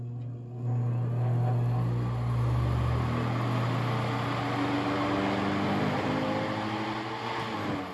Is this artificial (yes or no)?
no